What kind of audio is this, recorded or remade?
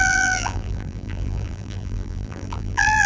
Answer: remade